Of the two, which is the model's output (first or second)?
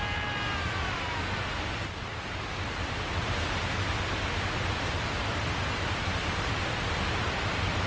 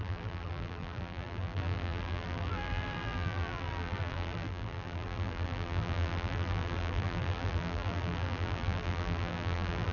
second